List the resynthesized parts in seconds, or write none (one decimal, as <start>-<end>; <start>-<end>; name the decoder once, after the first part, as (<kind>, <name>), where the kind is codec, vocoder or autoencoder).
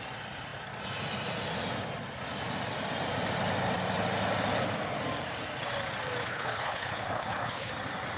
6.3-7.7 (codec, HILCodec)